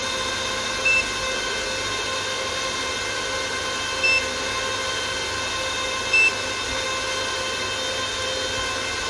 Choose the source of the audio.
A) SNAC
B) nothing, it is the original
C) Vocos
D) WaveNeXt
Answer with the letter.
B